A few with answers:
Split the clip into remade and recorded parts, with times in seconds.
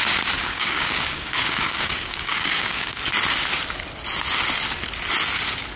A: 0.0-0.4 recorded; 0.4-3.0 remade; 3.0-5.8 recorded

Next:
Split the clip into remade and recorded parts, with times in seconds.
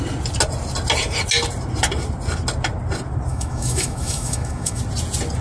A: 0.0-3.3 recorded; 3.3-4.8 remade; 4.8-5.4 recorded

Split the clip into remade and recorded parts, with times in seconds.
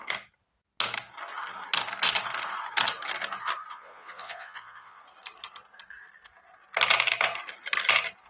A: 0.0-3.7 recorded; 3.7-5.0 remade; 5.0-8.3 recorded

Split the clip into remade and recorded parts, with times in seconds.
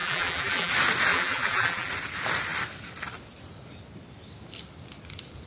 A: 0.0-0.7 remade; 0.7-1.1 recorded; 1.1-1.9 remade; 1.9-5.5 recorded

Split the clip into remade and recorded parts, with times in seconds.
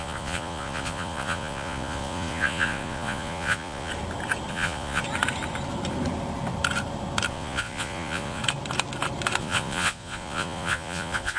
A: 0.0-3.9 remade; 3.9-4.5 recorded; 4.5-5.0 remade; 5.0-7.3 recorded; 7.3-8.4 remade; 8.4-9.4 recorded; 9.4-11.4 remade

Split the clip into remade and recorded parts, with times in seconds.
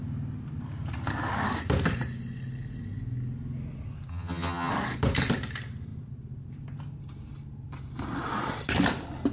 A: 0.0-4.1 recorded; 4.1-4.7 remade; 4.7-9.3 recorded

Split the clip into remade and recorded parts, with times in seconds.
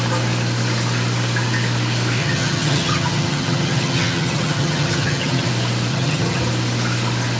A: 0.0-2.2 recorded; 2.2-5.5 remade; 5.5-5.9 recorded; 5.9-6.4 remade; 6.4-7.4 recorded